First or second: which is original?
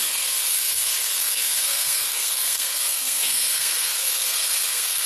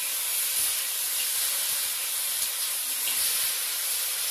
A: second